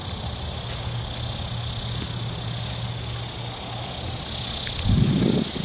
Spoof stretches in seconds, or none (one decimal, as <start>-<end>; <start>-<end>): none